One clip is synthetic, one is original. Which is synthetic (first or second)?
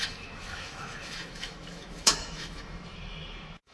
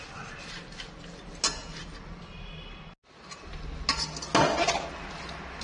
first